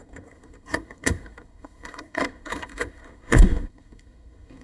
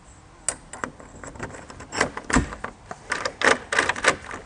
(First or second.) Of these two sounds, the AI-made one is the first